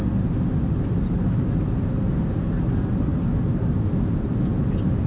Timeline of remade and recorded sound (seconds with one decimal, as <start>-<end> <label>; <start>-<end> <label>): 0.0-5.1 recorded